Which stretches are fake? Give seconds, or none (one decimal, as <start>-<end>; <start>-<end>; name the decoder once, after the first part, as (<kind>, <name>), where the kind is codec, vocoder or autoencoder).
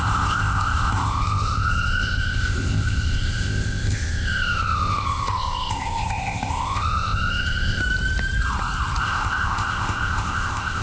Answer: 0.0-7.8 (codec, ZipCodec); 9.0-10.8